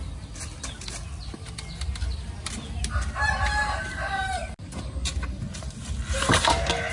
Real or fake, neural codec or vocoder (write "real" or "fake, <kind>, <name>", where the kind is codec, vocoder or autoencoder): real